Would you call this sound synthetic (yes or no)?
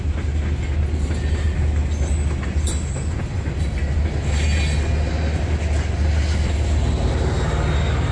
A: no